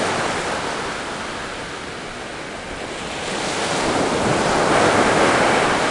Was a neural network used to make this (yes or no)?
no